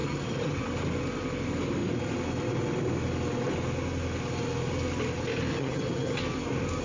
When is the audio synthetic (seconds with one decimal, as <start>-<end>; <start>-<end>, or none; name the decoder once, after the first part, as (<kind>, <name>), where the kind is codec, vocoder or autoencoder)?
0.0-0.6 (vocoder, HiFi-GAN); 5.5-6.2